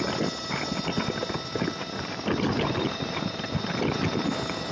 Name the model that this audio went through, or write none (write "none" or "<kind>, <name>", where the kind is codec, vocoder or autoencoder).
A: none